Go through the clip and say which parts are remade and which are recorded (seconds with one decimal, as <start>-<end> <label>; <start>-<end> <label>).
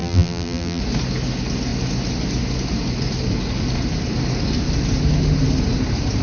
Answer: 0.0-0.8 remade; 0.8-6.2 recorded